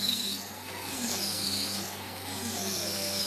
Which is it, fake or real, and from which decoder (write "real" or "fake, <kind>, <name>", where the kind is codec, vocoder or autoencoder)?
fake, codec, SNAC